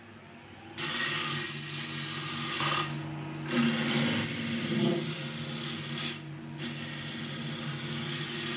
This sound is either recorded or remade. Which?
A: recorded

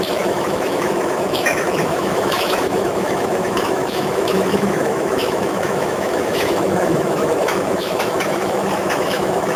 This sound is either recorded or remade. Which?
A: remade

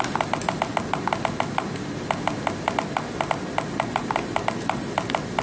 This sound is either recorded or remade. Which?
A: recorded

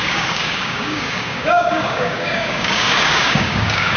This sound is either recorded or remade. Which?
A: remade